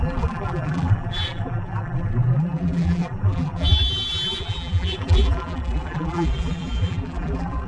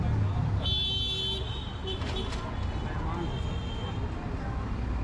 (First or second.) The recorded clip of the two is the second